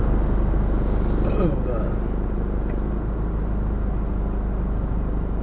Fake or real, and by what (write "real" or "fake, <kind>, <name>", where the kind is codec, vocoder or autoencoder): real